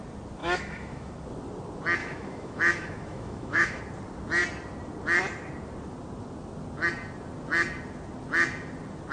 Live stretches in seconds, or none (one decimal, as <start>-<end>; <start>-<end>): 0.0-0.4; 1.1-2.0; 3.8-9.1